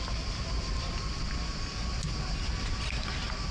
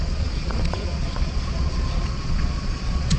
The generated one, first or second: second